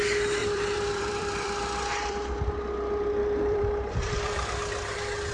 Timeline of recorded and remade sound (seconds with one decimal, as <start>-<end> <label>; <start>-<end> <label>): 0.0-0.4 recorded; 0.4-2.5 remade; 2.5-3.2 recorded; 3.2-4.5 remade; 4.5-5.3 recorded